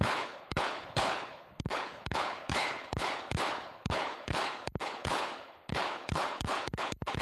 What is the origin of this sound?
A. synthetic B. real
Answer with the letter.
A